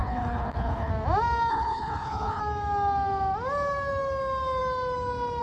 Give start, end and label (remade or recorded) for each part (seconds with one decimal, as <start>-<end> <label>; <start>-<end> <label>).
0.0-0.9 remade; 0.9-1.5 recorded; 1.5-2.4 remade; 2.4-5.4 recorded